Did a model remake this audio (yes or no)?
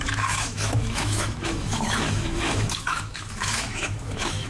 yes